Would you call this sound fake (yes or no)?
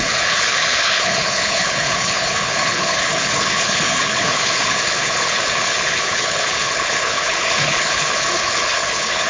yes